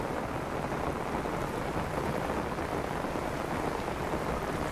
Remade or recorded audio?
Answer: recorded